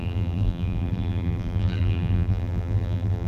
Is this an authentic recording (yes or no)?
no